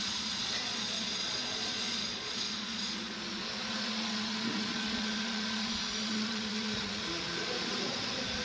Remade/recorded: remade